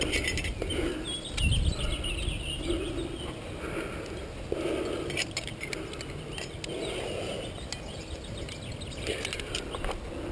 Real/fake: real